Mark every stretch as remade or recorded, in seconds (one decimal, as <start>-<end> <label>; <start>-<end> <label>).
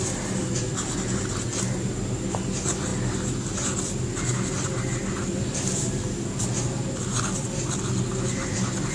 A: 0.0-8.9 recorded